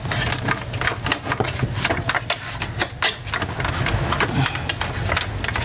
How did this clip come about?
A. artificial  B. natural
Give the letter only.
B